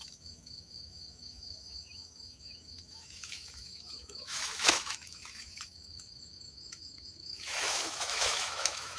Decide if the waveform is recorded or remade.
remade